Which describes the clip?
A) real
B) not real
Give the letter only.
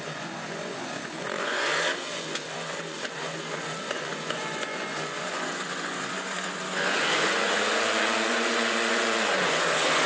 B